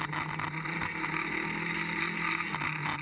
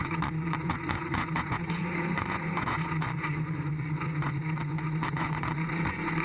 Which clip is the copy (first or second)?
second